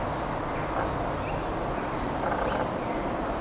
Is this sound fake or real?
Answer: real